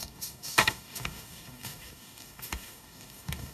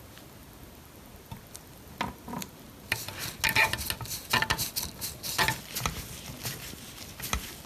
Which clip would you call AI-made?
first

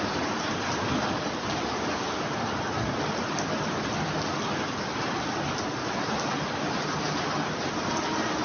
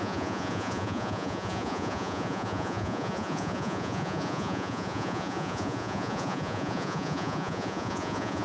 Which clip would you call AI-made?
second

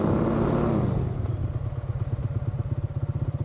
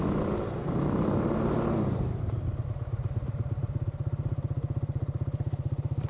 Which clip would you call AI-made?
second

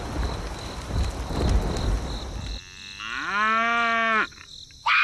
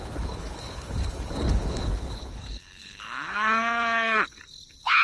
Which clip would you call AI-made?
second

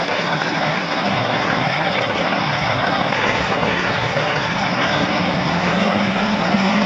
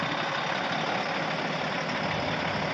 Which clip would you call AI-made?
first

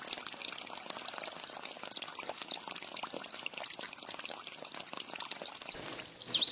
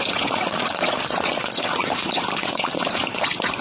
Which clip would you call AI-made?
second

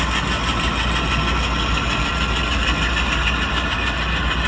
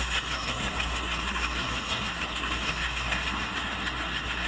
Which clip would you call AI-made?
second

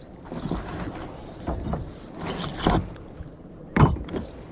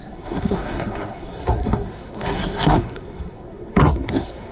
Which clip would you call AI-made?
second